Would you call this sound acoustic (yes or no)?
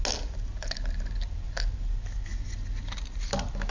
yes